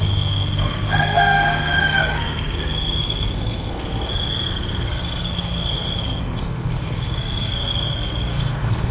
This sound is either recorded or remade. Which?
remade